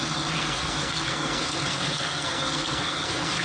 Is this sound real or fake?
fake